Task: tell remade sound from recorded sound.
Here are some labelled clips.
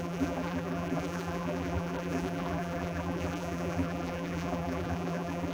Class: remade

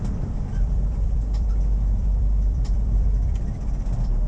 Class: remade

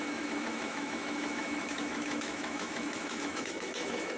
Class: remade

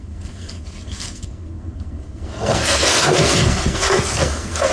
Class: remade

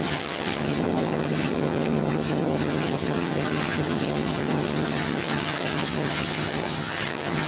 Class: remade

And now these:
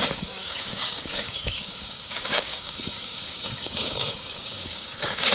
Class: remade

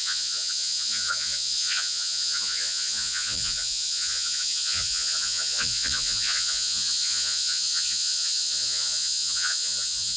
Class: remade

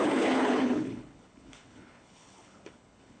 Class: remade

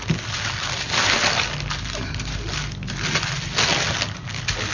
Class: recorded